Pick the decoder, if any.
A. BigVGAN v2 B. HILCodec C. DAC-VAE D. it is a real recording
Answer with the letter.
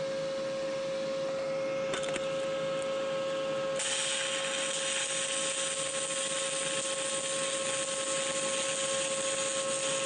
D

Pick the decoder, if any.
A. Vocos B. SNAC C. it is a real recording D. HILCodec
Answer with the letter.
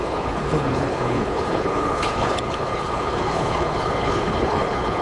D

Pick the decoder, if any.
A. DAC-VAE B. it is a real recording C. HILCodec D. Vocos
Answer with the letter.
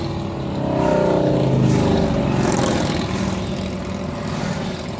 B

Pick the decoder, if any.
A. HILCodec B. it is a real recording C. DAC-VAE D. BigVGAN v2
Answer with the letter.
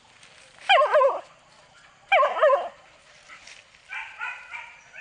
B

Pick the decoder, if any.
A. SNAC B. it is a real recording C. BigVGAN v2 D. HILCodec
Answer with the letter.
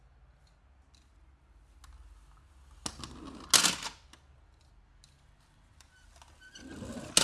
B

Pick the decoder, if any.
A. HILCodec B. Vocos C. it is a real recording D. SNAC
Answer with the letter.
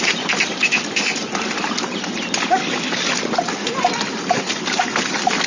C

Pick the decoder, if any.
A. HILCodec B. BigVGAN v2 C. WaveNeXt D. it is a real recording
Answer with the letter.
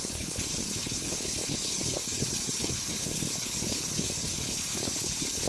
A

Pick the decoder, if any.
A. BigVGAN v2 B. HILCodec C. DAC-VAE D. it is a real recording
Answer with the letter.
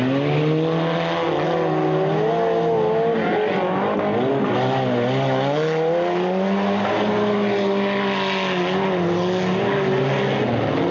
D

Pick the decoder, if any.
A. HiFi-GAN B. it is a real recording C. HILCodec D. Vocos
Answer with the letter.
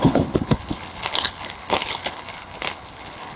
C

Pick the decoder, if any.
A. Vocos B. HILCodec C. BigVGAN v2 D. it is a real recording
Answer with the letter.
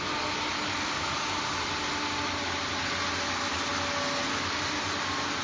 D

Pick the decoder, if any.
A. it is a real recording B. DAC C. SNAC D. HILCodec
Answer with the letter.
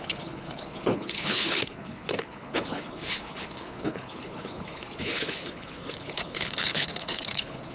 D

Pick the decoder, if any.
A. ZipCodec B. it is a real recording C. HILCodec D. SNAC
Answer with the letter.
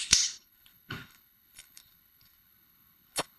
C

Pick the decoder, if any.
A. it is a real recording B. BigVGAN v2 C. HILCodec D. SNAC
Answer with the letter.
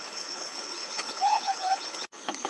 C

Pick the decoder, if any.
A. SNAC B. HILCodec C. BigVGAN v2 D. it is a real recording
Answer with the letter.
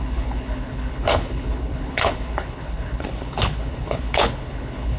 B